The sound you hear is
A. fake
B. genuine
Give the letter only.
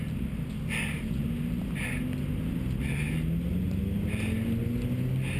B